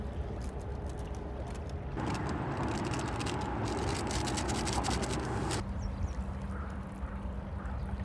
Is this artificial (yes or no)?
no